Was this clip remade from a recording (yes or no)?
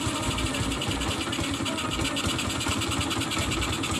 no